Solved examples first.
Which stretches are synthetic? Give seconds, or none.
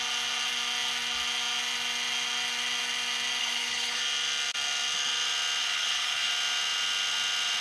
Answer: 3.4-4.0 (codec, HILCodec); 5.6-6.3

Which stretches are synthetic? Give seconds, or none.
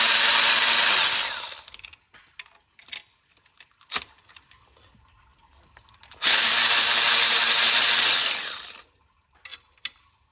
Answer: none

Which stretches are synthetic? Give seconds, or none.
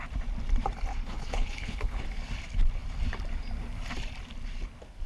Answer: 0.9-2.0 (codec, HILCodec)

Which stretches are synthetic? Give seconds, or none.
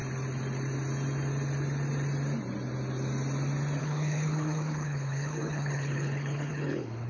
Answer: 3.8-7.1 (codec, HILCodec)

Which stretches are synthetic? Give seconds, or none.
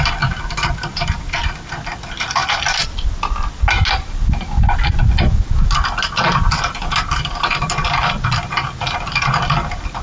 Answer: none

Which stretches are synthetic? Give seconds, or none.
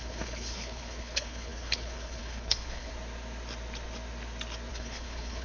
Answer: 0.0-2.9 (codec, HILCodec); 4.7-5.4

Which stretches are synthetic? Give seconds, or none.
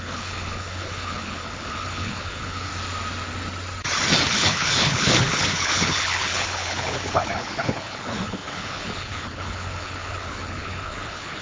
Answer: 0.0-2.7 (codec, HILCodec); 4.3-11.4